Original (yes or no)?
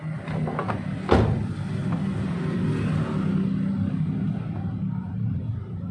yes